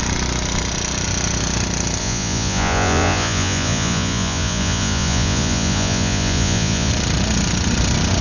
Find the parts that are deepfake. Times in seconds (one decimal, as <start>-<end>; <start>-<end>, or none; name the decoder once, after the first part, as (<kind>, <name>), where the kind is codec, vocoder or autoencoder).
2.0-6.9 (vocoder, Vocos)

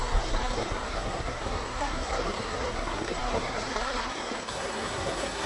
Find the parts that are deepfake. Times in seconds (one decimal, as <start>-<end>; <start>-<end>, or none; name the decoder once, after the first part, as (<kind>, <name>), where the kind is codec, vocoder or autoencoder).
0.0-5.5 (codec, SNAC)

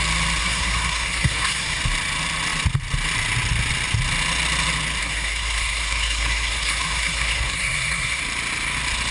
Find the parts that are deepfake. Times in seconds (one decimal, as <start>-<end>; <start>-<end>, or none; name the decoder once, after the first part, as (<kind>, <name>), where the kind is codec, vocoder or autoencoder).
0.4-1.8 (codec, SNAC); 5.0-8.2

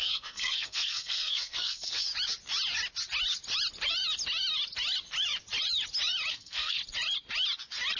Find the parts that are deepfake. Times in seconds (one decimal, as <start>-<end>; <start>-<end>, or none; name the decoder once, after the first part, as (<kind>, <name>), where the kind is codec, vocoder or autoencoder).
0.0-2.1 (codec, SNAC); 6.3-6.8

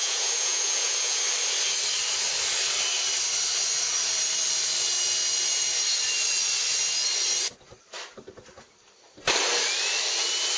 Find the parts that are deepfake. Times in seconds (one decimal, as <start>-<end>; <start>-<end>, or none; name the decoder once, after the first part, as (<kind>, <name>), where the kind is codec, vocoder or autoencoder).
0.0-1.2 (vocoder, Vocos)

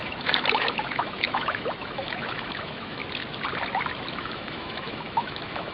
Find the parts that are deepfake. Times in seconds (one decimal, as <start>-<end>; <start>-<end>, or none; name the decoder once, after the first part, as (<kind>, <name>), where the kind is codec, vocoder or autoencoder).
0.0-3.0 (autoencoder, DAC-VAE); 4.1-5.7

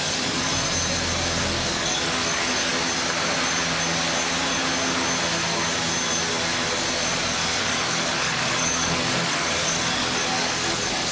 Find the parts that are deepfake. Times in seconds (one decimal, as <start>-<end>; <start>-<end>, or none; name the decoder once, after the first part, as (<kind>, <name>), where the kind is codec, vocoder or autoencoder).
0.0-0.5 (codec, DAC); 1.4-2.7; 7.6-11.1